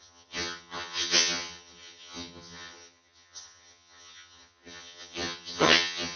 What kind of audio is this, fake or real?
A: fake